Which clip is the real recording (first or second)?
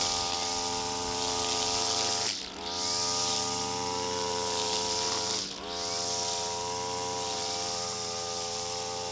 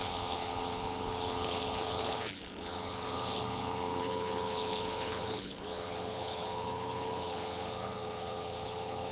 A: first